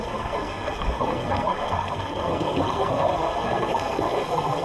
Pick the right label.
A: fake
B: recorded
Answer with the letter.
A